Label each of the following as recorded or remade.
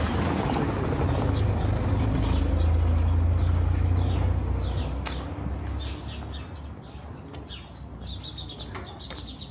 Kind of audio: recorded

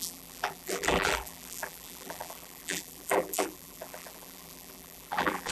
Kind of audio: remade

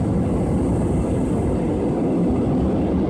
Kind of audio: recorded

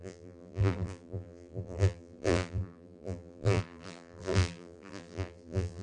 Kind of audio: remade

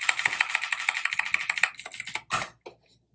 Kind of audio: recorded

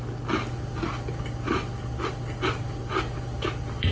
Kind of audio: recorded